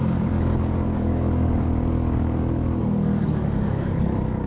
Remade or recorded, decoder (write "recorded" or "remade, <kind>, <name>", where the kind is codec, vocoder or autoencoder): remade, codec, DAC